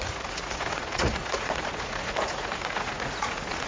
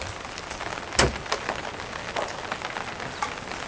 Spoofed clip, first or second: first